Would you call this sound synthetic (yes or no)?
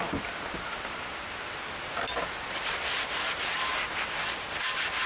no